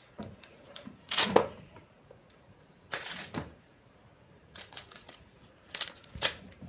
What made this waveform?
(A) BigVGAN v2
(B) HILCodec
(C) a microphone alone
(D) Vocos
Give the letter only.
D